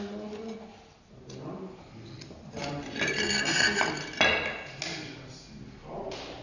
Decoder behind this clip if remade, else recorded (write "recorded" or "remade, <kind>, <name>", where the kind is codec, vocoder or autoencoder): recorded